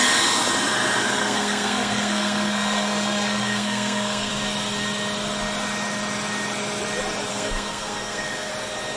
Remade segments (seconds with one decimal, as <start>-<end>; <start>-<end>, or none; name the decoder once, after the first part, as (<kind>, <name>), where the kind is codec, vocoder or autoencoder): 1.2-4.3 (codec, SNAC); 7.3-8.5